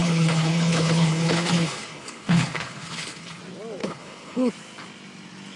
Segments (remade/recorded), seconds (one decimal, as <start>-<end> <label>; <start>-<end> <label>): 0.0-3.4 remade; 3.4-3.8 recorded; 3.8-4.5 remade; 4.5-5.6 recorded